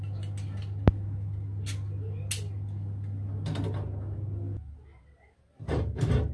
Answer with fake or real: real